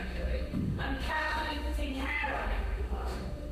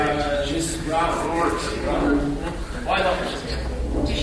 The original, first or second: second